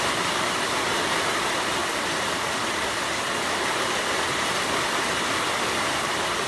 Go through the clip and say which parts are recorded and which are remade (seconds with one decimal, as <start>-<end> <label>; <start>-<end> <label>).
0.0-6.5 remade